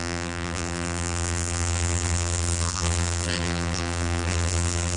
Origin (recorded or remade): remade